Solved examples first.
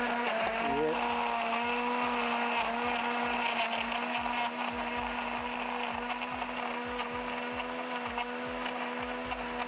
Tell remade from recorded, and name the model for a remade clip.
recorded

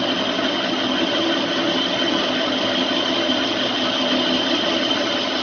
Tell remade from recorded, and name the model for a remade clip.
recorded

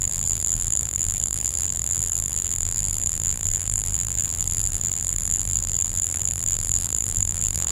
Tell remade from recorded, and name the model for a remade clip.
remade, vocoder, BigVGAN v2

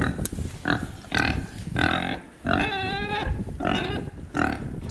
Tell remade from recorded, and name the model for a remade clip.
recorded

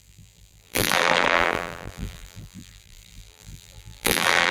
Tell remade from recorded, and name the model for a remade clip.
remade, vocoder, BigVGAN v2